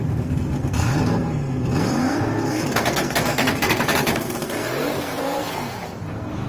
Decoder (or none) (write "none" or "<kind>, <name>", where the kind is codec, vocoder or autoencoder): codec, SNAC